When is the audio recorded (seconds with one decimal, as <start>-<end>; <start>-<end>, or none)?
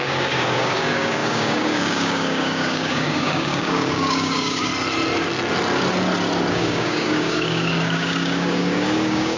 4.7-6.5